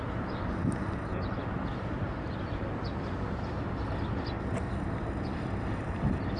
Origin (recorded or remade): remade